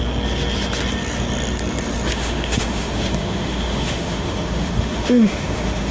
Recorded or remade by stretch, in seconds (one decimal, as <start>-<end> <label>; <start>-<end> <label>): 0.0-2.1 recorded; 2.1-5.9 remade